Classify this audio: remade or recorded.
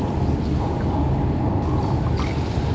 recorded